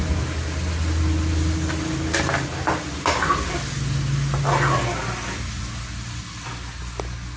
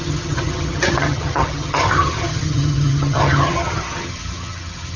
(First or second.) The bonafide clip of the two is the first